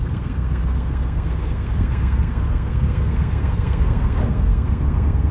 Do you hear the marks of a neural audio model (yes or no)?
yes